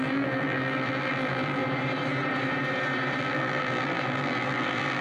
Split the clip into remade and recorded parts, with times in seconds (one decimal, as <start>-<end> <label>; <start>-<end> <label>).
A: 0.0-1.6 remade; 1.6-3.2 recorded; 3.2-5.0 remade